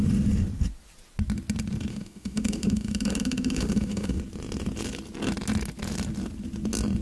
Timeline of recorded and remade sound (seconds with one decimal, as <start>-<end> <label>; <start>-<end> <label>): 0.0-1.9 recorded; 1.9-4.2 remade; 4.2-7.0 recorded